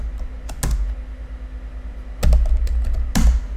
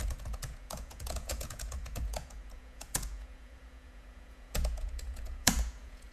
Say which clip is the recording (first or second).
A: first